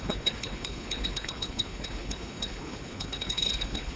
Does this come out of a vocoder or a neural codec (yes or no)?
yes